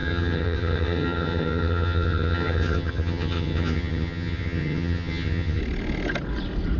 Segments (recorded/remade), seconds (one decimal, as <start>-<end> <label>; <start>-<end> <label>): 0.0-5.6 remade; 5.6-6.8 recorded